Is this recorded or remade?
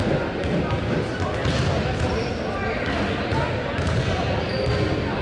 recorded